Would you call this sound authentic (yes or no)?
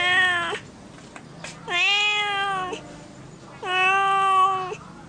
yes